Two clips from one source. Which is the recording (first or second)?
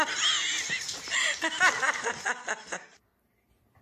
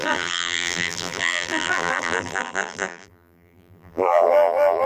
first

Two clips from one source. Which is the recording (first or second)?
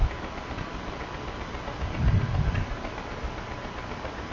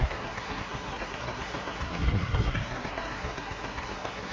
first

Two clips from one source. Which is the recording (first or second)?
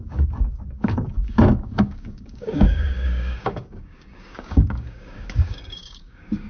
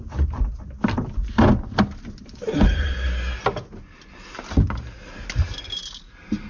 second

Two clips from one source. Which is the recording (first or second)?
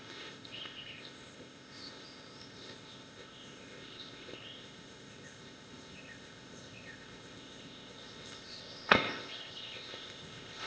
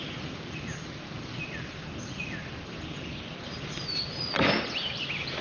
second